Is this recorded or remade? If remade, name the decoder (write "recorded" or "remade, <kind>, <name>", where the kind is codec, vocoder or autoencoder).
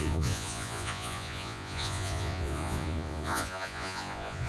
remade, vocoder, Vocos